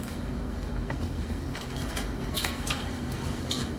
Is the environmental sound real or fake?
fake